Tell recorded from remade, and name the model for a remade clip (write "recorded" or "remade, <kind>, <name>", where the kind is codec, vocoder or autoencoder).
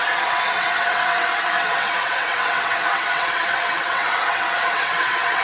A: remade, vocoder, WaveNeXt